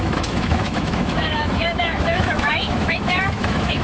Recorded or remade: remade